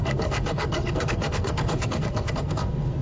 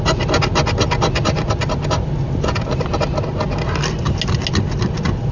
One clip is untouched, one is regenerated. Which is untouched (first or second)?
second